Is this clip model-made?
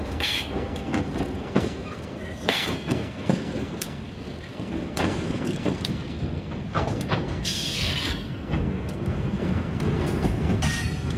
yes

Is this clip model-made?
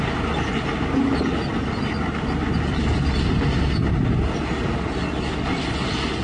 no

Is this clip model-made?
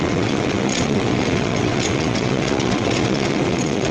yes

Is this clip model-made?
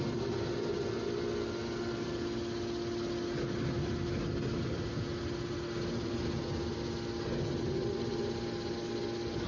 no